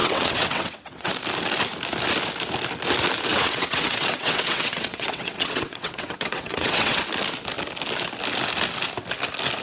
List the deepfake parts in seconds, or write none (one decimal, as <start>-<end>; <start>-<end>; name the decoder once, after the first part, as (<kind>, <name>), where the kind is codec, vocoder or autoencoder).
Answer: 0.0-1.1 (vocoder, WaveNeXt); 3.3-7.0